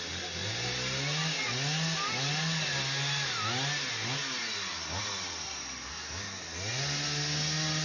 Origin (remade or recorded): recorded